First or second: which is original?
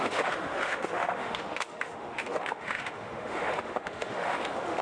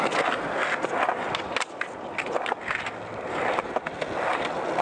second